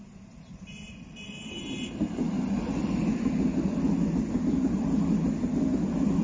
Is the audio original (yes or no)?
yes